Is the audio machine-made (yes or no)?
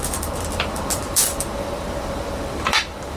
yes